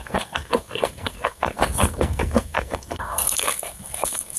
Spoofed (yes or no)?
yes